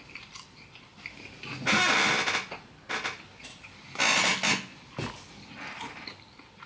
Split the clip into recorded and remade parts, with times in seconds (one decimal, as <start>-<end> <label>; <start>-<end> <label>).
0.0-6.7 recorded